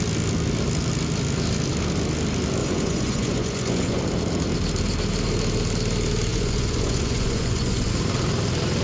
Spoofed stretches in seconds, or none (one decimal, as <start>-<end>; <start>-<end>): 2.6-4.0; 6.3-7.9